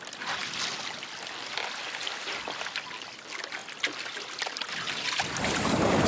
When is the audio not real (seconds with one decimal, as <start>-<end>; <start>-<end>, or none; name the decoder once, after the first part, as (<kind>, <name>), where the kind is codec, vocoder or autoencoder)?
none